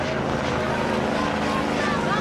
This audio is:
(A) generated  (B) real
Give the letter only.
B